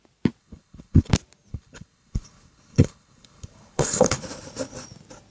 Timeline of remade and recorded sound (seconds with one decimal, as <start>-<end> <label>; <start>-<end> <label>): 0.0-0.4 recorded; 0.4-1.1 remade; 1.1-1.5 recorded; 1.5-4.2 remade; 4.2-5.3 recorded